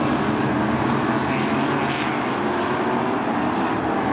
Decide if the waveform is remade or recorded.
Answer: recorded